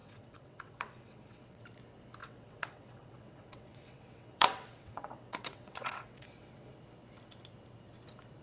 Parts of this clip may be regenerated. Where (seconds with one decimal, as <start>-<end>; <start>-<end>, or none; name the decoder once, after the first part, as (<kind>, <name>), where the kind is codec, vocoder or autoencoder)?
0.0-1.6 (vocoder, WaveNeXt); 2.2-6.7